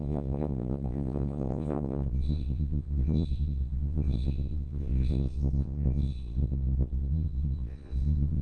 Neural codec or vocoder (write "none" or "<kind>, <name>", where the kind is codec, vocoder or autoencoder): vocoder, Vocos